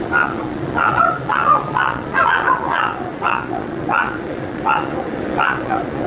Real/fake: fake